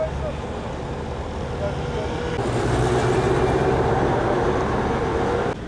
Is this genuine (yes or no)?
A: yes